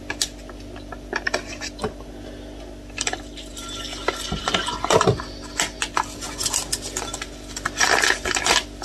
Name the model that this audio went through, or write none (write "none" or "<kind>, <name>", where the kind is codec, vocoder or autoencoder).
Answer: none